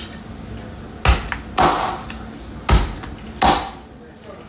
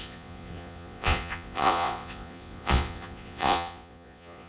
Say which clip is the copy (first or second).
second